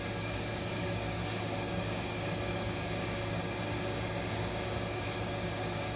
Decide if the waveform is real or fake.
fake